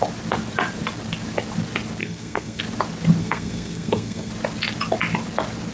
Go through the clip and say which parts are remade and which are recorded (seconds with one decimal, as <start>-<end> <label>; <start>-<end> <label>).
0.0-2.0 recorded; 2.0-2.6 remade; 2.6-3.2 recorded; 3.2-4.3 remade; 4.3-5.7 recorded